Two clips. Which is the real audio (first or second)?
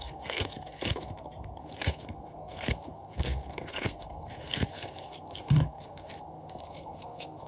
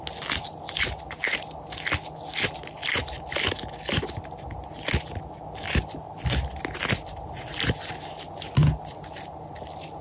second